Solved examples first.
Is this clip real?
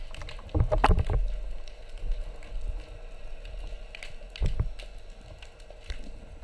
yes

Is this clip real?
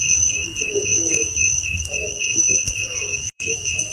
no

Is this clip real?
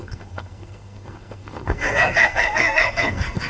no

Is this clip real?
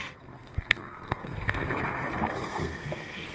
no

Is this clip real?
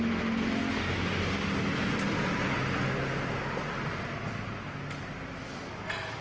yes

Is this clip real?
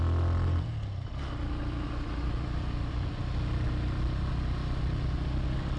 yes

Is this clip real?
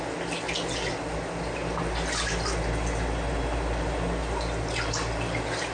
yes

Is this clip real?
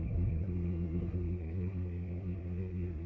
no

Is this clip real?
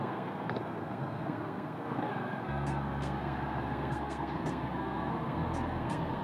no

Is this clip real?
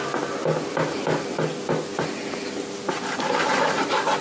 yes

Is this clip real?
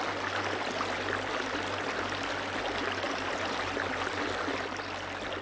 yes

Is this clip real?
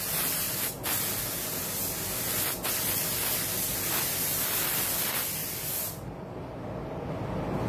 yes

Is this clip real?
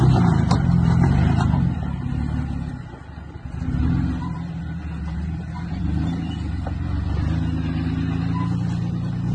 yes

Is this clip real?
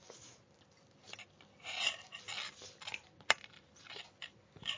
yes